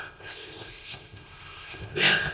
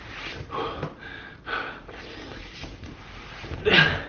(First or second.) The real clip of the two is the second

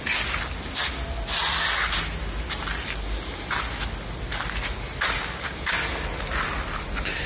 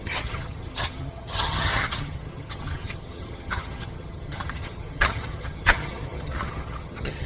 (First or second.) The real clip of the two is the first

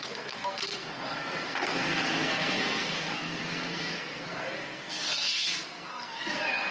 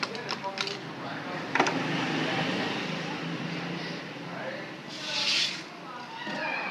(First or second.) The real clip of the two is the second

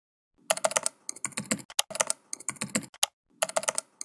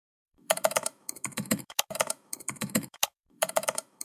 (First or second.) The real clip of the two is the first